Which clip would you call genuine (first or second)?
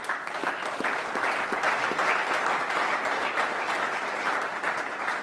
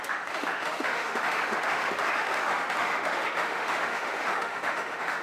first